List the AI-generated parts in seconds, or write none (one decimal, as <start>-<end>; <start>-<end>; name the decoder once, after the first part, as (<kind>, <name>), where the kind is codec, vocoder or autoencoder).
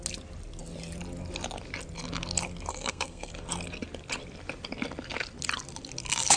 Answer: 2.7-3.3 (codec, SNAC)